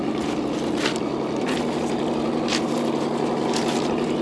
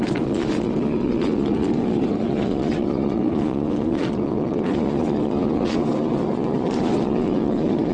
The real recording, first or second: first